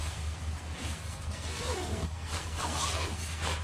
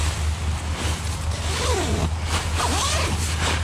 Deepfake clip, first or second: first